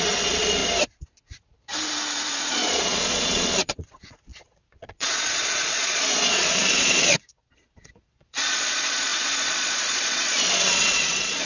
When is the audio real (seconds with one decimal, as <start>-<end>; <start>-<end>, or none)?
0.6-2.3